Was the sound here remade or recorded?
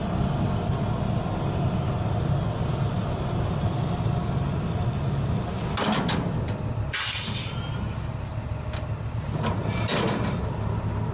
recorded